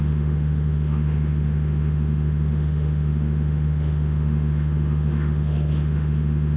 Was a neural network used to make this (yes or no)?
yes